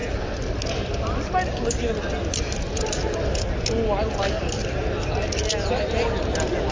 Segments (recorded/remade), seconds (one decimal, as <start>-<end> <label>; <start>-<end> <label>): 0.0-6.7 recorded